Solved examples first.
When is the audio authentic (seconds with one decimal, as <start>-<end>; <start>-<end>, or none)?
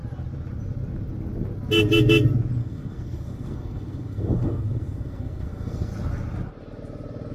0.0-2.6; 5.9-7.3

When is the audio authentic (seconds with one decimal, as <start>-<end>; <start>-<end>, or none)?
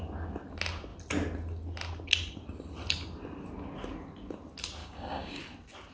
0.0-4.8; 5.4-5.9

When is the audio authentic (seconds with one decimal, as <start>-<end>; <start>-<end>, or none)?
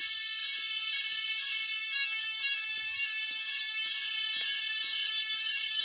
0.0-1.8; 3.9-5.0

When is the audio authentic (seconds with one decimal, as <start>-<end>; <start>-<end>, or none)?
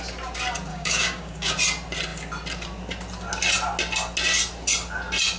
0.0-0.7; 1.5-5.4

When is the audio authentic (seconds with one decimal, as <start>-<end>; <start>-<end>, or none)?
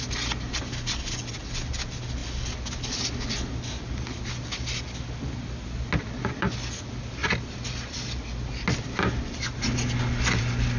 0.0-10.8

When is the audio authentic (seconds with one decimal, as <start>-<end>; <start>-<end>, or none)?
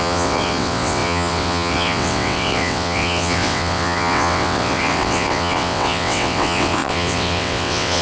none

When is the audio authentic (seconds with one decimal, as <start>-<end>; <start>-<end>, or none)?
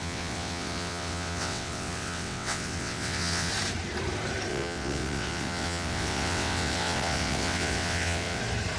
3.5-4.5; 8.4-8.8